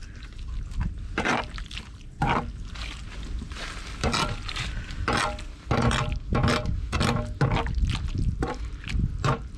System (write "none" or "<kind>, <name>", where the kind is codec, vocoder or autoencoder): none